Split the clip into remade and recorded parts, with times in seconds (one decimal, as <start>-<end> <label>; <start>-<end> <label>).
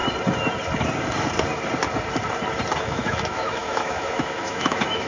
0.0-2.8 recorded; 2.8-5.1 remade